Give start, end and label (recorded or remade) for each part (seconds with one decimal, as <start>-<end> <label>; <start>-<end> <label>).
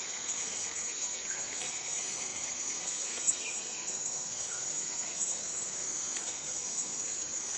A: 0.0-7.6 remade